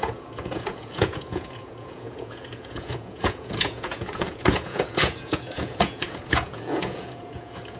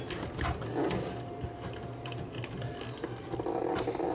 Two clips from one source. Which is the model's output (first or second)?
first